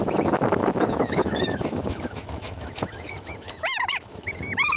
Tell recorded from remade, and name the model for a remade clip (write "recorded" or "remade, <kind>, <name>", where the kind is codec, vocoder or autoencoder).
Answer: remade, autoencoder, DAC-VAE